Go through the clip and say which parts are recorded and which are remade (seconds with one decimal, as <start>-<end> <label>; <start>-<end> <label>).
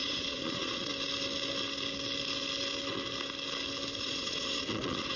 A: 0.0-0.9 remade; 0.9-4.0 recorded; 4.0-5.2 remade